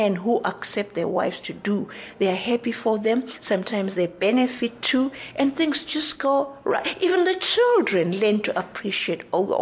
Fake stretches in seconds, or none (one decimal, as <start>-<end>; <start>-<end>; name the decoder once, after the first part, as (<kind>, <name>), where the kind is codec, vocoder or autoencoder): 3.7-4.7 (vocoder, Vocos)